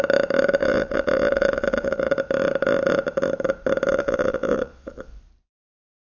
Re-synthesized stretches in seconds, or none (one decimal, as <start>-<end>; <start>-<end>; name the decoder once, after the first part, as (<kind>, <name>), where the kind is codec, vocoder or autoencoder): 0.6-2.1 (vocoder, Vocos); 3.9-5.2